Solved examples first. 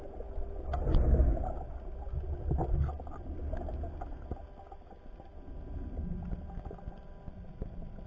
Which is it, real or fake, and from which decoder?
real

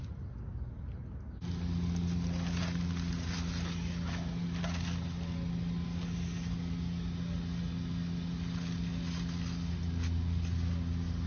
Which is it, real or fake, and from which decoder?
real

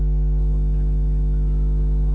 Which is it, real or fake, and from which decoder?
real